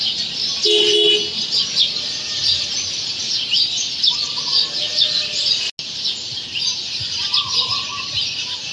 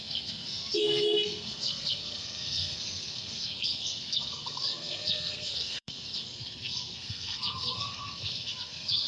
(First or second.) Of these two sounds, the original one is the first